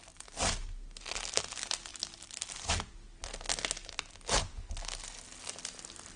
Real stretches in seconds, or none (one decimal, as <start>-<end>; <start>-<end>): 0.0-6.2